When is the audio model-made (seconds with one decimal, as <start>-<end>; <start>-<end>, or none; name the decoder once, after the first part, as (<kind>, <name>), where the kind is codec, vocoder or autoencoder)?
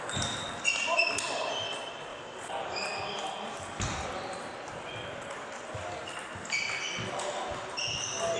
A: 2.1-5.7 (vocoder, BigVGAN v2)